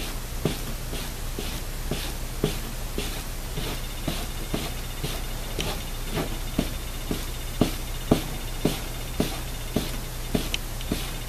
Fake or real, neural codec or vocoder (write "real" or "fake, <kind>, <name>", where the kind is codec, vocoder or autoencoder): real